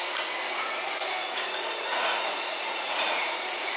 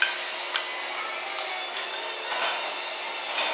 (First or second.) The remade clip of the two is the first